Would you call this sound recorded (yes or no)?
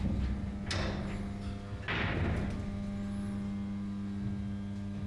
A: yes